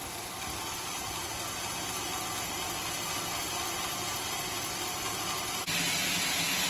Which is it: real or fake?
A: real